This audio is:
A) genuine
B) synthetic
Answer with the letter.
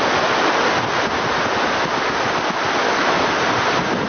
A